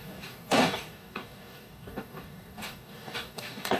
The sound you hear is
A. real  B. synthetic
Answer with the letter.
B